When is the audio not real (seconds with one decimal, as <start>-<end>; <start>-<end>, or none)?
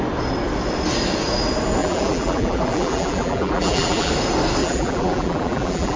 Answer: 1.8-4.1; 4.6-6.0